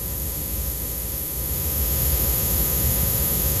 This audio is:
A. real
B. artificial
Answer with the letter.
B